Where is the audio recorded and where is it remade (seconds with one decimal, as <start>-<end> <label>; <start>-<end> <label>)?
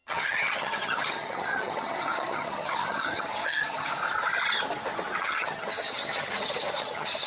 0.0-3.9 remade; 3.9-5.2 recorded; 5.2-7.3 remade